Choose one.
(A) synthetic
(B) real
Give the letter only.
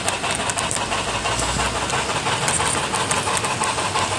B